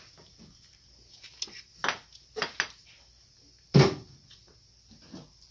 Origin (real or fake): real